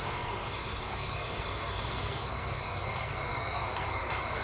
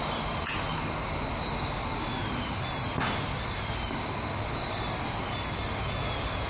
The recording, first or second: second